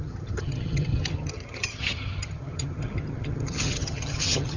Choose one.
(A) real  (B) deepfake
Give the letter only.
B